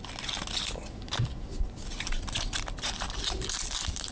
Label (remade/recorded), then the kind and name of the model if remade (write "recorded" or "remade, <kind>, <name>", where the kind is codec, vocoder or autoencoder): recorded